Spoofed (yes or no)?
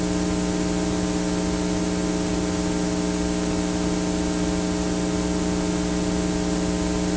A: no